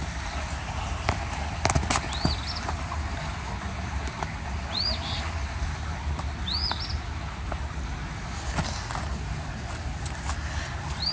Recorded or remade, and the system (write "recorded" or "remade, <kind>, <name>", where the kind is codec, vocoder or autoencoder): recorded